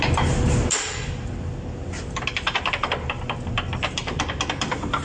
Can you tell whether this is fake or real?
real